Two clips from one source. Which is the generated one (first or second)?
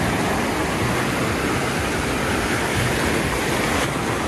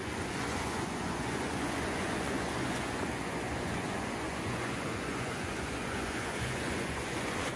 second